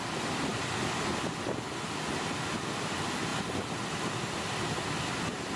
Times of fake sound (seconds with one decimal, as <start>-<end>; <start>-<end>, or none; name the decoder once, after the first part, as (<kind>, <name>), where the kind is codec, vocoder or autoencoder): 0.0-0.5 (vocoder, BigVGAN v2); 2.6-5.6